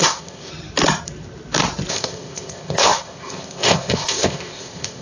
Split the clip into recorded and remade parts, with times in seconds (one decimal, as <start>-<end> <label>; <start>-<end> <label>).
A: 0.0-0.5 remade; 0.5-1.9 recorded; 1.9-5.0 remade